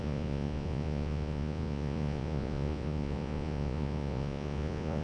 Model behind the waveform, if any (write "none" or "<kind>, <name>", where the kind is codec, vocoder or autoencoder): vocoder, Vocos